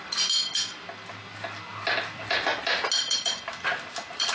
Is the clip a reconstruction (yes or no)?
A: no